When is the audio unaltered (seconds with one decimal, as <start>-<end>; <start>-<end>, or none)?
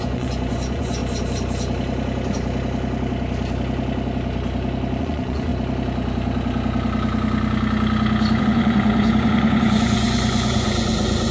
1.0-5.0; 5.5-8.4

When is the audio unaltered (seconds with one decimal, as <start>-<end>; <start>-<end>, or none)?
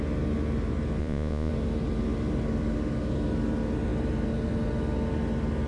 0.0-1.0; 1.5-5.7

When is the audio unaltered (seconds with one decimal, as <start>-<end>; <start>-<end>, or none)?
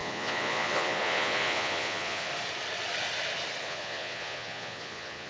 2.3-3.6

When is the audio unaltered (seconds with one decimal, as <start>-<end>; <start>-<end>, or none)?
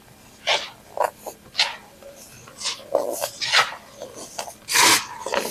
0.0-5.5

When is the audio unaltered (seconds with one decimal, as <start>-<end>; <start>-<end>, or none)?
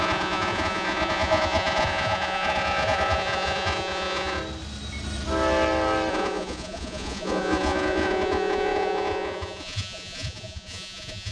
4.4-6.1